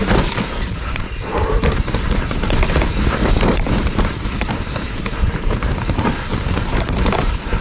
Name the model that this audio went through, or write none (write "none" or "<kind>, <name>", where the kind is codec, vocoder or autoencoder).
vocoder, BigVGAN v2